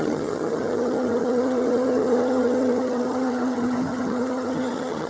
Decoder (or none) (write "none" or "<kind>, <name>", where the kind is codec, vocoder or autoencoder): vocoder, HiFi-GAN